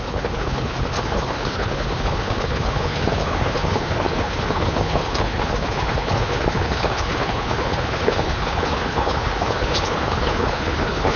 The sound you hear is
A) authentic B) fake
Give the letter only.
B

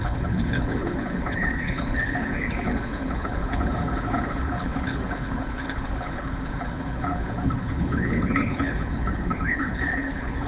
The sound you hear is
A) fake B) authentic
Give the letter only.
A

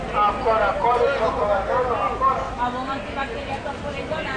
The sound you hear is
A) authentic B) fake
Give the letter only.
A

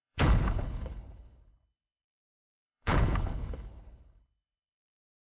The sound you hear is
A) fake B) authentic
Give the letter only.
A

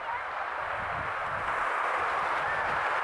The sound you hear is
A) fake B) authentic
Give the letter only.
B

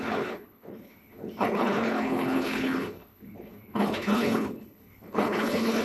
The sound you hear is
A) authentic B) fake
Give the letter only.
B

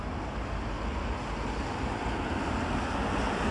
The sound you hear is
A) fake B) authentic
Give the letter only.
B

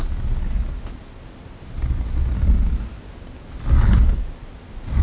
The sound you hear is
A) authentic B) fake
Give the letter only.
A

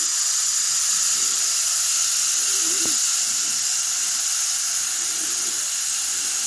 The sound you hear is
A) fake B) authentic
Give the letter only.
B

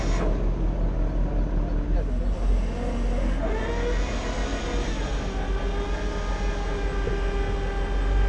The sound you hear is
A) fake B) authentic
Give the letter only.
B